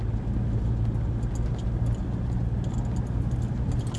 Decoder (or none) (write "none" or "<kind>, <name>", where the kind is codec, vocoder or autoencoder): none